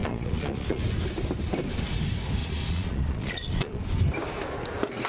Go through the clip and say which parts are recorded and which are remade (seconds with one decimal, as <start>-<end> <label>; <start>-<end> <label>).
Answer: 0.0-0.8 remade; 0.8-2.4 recorded; 2.4-3.8 remade; 3.8-5.1 recorded